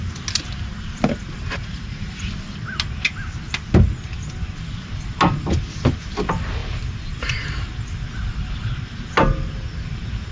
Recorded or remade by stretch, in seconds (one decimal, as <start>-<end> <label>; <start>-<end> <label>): 0.0-1.6 recorded; 1.6-2.3 remade; 2.3-10.3 recorded